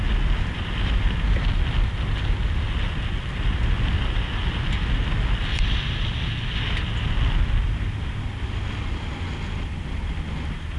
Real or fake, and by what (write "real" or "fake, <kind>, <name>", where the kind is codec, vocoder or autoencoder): real